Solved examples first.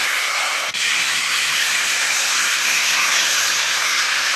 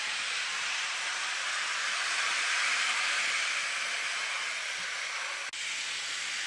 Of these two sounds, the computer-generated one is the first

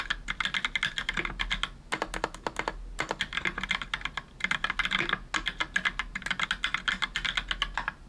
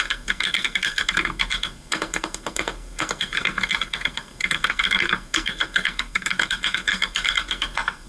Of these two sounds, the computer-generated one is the second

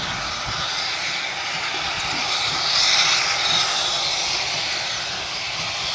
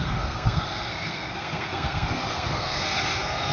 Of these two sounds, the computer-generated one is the second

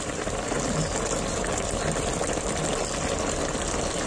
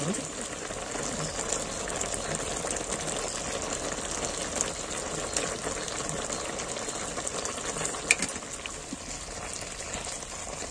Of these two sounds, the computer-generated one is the first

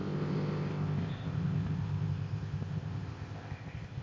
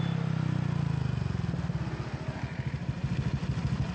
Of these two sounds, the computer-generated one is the first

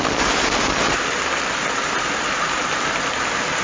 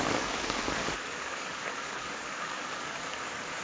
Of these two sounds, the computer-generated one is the second